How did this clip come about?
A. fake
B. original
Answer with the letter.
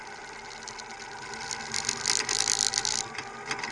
B